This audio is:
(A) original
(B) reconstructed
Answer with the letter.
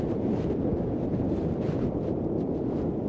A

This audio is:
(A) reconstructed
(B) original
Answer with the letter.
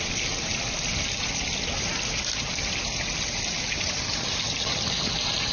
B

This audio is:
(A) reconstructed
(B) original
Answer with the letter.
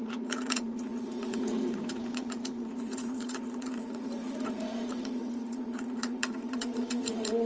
A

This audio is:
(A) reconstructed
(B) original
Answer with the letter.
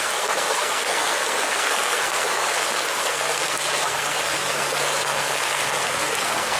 A